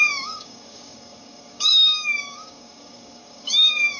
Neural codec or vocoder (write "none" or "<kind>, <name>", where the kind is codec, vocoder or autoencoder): codec, DAC